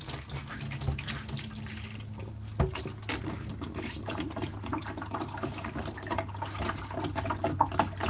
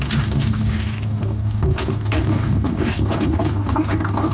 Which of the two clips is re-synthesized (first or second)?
second